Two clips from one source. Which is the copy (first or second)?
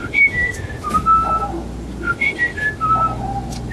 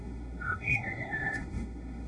second